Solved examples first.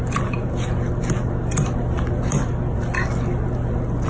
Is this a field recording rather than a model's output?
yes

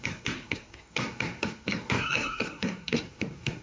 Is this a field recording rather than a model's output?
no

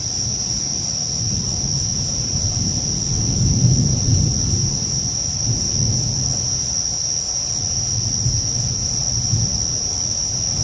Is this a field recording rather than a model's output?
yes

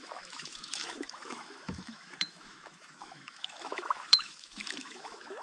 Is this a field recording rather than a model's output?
no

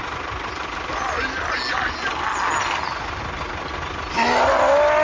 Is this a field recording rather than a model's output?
yes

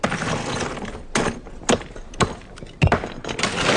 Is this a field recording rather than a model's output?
yes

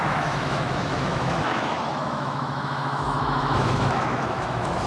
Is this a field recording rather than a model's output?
no